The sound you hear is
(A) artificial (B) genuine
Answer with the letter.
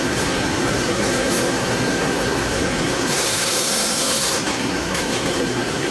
A